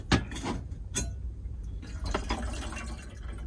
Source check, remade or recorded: recorded